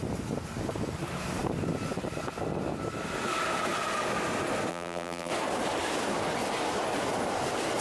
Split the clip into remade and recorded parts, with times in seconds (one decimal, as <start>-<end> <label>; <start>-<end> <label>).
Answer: 0.0-4.7 recorded; 4.7-5.3 remade; 5.3-7.8 recorded